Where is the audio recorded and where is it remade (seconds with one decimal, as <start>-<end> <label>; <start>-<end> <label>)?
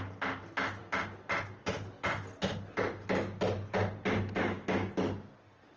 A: 0.0-4.4 recorded; 4.4-4.9 remade; 4.9-5.8 recorded